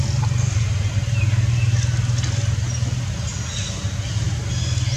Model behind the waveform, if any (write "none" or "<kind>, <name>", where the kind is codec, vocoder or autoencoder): none